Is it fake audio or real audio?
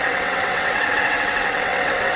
fake